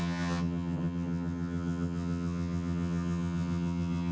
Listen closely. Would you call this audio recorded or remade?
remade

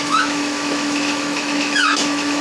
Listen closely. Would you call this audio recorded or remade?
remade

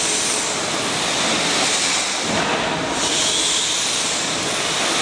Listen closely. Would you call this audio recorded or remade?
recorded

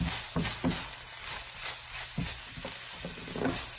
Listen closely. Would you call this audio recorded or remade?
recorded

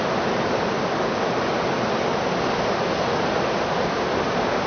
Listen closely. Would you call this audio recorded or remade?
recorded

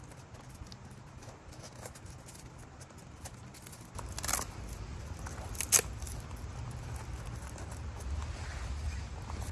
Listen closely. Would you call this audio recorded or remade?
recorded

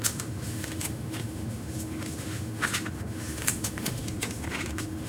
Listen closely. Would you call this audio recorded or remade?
remade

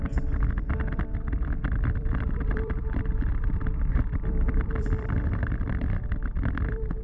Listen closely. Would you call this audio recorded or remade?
remade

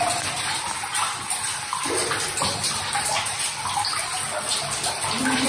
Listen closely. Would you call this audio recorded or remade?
recorded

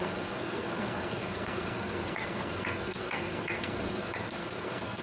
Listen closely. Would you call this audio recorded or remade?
remade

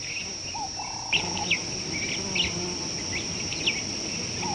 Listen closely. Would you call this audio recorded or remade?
recorded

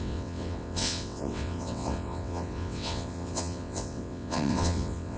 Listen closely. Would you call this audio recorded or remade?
remade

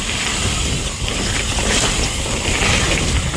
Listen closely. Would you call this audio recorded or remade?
recorded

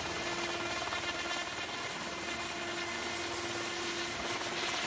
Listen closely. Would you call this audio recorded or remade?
recorded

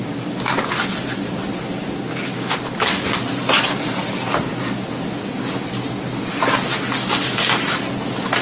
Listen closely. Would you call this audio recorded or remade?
recorded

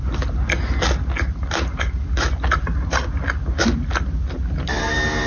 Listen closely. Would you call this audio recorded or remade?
recorded